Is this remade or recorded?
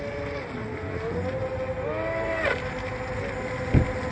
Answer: recorded